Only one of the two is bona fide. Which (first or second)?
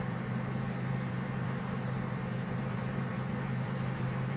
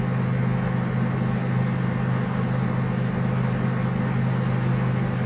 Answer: second